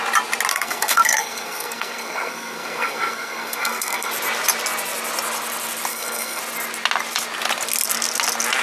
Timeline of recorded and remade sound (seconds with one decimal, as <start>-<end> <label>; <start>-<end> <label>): 0.0-0.5 recorded; 0.5-4.1 remade; 4.1-5.9 recorded; 5.9-6.4 remade; 6.4-8.6 recorded